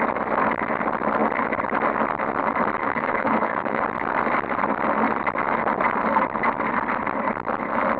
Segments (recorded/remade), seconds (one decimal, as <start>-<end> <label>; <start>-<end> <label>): 0.0-2.8 recorded; 2.8-3.8 remade; 3.8-8.0 recorded